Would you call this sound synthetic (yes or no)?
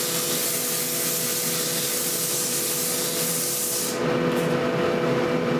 no